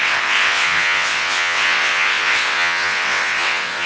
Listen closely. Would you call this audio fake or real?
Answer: fake